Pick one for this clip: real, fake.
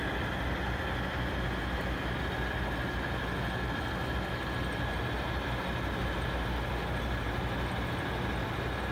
real